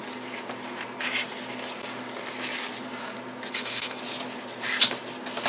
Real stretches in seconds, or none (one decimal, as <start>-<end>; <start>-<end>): 0.0-3.5; 4.0-5.5